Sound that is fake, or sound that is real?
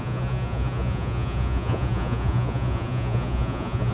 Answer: fake